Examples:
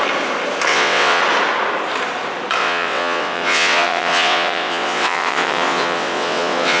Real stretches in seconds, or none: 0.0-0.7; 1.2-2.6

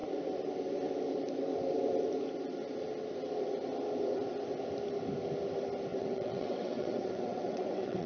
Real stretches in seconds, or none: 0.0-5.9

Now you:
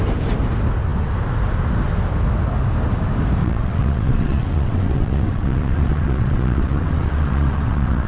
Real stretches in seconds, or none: 0.0-3.4

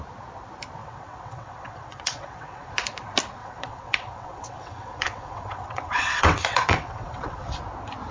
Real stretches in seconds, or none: 0.0-0.8; 2.7-3.4; 7.6-8.1